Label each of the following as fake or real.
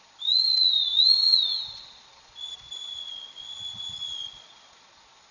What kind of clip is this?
fake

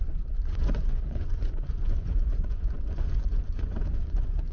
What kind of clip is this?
fake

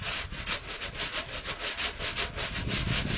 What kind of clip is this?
real